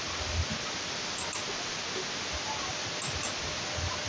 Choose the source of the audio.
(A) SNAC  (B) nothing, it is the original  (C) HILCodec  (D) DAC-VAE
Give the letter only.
B